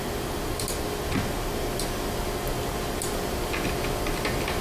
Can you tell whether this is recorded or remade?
recorded